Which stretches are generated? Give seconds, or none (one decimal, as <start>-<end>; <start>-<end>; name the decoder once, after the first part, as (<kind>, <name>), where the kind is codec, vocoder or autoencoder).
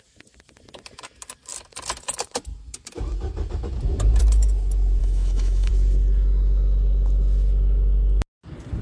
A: 5.0-5.7 (autoencoder, DAC-VAE)